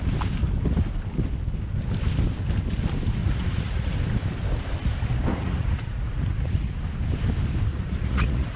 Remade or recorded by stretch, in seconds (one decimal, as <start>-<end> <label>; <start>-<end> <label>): 0.0-3.2 recorded; 3.2-3.9 remade; 3.9-5.3 recorded; 5.3-6.8 remade; 6.8-7.7 recorded; 7.7-8.6 remade